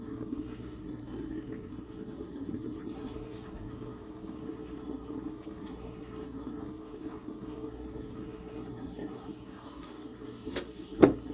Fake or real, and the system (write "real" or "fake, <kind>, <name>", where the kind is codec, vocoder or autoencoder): fake, codec, SNAC